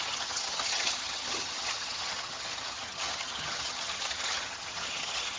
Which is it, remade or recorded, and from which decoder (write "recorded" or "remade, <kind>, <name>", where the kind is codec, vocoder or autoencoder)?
remade, vocoder, HiFi-GAN